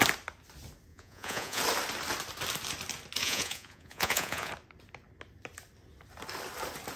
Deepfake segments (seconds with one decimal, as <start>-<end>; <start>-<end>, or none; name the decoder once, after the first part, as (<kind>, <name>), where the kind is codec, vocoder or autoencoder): 0.9-1.6 (vocoder, Vocos); 3.2-4.5